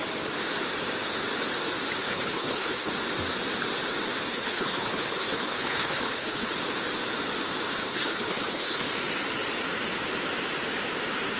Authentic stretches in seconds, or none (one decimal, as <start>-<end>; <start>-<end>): 0.0-2.0; 2.9-4.3; 6.5-7.8; 8.9-11.4